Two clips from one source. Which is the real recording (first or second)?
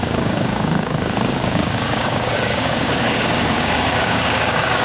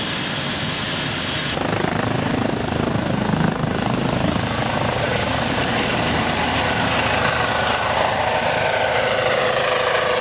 second